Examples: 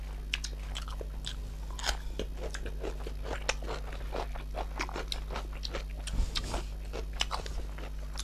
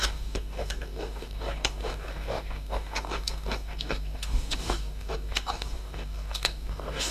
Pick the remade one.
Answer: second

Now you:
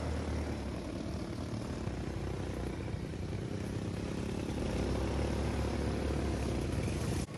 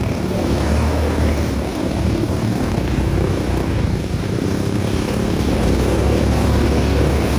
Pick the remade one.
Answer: second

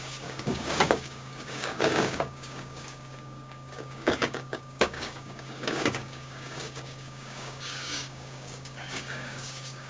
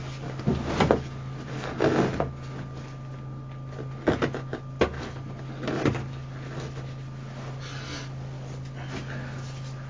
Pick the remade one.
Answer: first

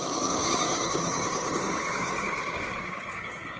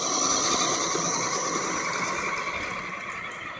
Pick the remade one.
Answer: first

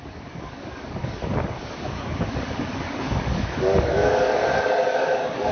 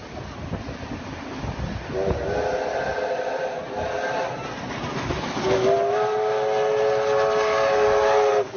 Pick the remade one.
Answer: first